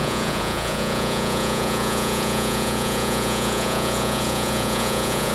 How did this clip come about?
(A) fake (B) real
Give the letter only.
A